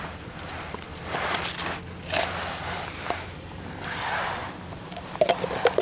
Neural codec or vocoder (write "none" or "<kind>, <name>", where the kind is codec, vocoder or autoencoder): none